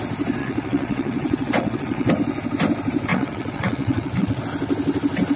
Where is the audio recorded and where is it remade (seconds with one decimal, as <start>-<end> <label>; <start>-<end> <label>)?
0.0-0.4 recorded; 0.4-2.1 remade; 2.1-3.1 recorded; 3.1-4.4 remade; 4.4-5.4 recorded